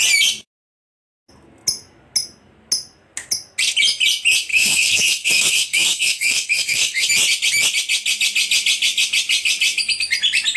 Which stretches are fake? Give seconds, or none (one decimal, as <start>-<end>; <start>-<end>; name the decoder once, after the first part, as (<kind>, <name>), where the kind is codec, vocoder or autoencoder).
4.5-7.1 (codec, SNAC)